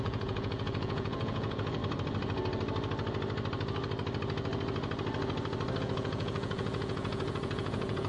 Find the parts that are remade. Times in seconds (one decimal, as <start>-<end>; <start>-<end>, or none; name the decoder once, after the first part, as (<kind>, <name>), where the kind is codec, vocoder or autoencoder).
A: 0.0-1.8 (vocoder, Vocos); 5.8-8.1